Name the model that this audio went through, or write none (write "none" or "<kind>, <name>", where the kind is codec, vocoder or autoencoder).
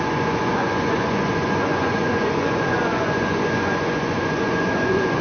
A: vocoder, Vocos